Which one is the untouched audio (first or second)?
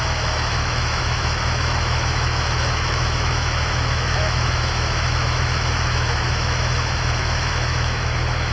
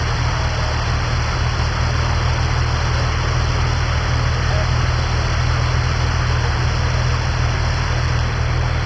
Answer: second